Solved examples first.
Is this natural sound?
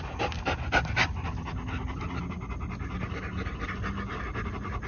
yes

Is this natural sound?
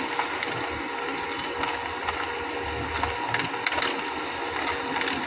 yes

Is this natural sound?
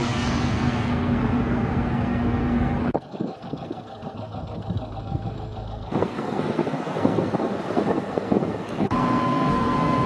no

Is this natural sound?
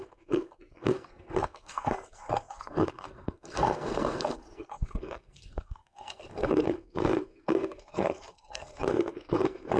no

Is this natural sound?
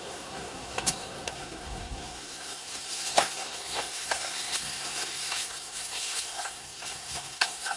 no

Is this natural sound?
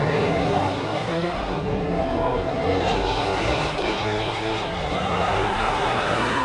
no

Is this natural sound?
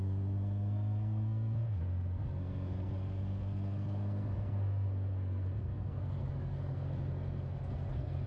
no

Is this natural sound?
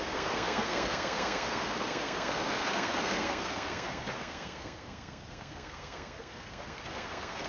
no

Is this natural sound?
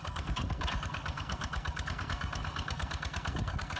no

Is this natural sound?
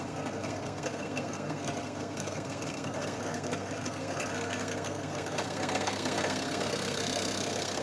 no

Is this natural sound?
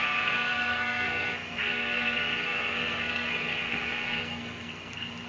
no